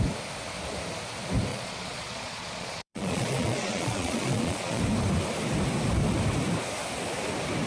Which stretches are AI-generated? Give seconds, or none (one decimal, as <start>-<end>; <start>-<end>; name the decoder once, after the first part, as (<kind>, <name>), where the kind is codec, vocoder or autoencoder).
1.5-4.8 (vocoder, Vocos)